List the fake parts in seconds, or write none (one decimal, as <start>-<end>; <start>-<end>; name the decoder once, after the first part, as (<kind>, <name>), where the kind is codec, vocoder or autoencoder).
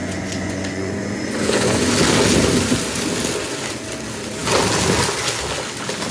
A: 0.0-1.9 (vocoder, Vocos)